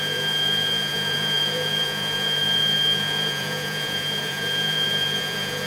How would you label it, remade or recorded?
remade